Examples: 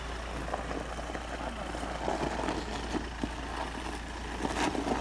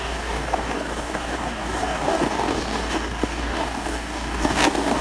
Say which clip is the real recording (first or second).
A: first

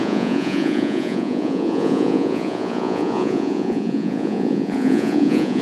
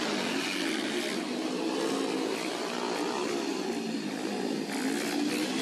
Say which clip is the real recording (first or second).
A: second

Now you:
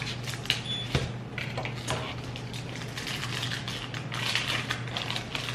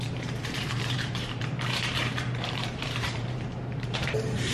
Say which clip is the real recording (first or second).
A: first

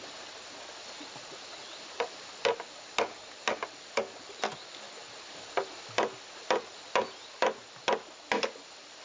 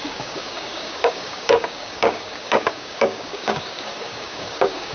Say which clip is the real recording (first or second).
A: first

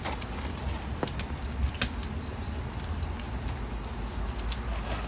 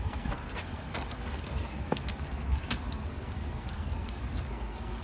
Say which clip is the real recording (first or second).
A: first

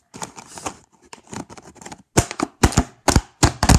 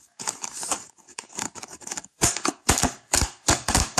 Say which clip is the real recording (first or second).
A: first